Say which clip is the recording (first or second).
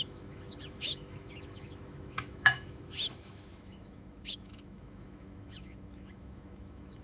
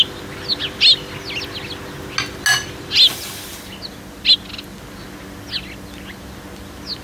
second